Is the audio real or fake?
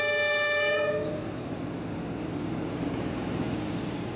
real